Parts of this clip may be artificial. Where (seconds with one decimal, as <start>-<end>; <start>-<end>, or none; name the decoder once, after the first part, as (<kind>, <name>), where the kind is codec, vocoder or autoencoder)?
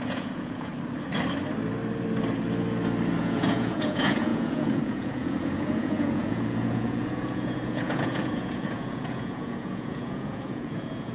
0.0-0.7 (vocoder, Vocos); 3.2-11.1